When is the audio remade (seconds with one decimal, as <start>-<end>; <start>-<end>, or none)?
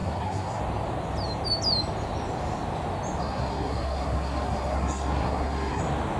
0.0-0.6; 3.2-5.8